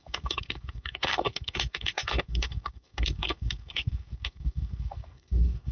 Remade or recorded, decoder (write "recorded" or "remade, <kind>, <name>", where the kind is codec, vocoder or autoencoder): remade, codec, SNAC